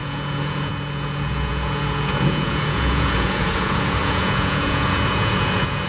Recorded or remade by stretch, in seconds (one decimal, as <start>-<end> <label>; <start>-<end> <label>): 0.0-5.9 remade